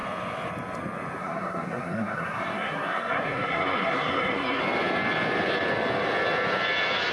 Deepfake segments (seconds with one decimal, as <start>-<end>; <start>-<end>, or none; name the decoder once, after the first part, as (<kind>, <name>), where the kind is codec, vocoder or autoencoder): 1.2-4.6 (codec, SNAC)